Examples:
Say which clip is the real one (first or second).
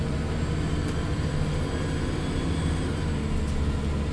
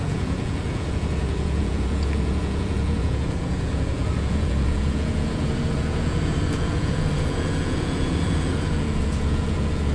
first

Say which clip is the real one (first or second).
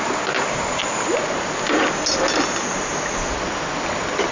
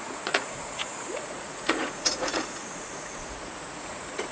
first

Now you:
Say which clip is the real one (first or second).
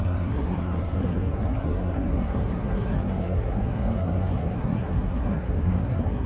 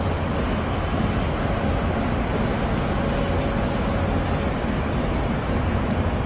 second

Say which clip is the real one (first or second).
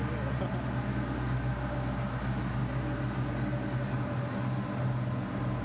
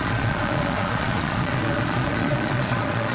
first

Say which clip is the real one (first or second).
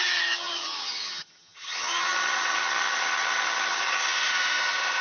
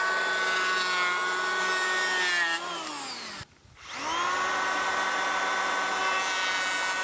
second